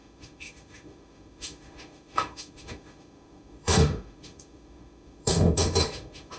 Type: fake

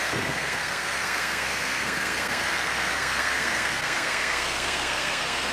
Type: fake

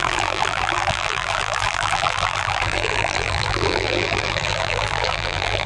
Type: fake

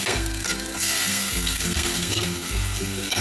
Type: fake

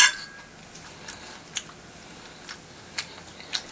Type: real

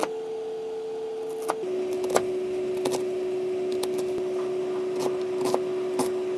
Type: real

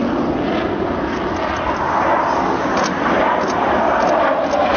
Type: real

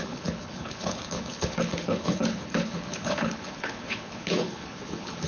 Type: fake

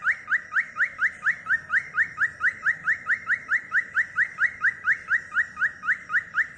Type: real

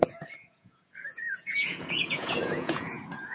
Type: fake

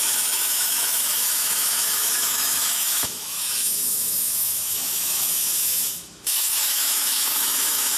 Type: fake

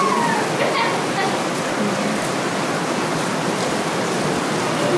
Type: real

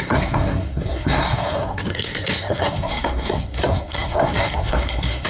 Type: fake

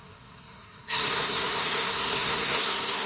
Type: fake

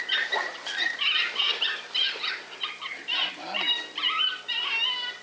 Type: real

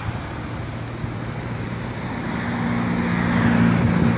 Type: real